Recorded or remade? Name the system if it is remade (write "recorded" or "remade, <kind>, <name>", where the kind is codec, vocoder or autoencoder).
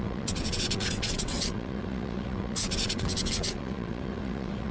remade, vocoder, WaveNeXt